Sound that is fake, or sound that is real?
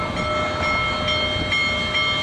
real